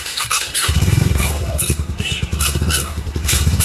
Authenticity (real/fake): fake